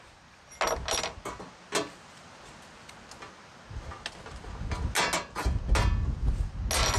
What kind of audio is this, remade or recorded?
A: recorded